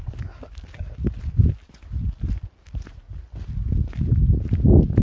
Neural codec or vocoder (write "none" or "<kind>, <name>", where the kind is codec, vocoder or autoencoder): none